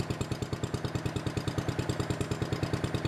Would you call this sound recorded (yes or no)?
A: yes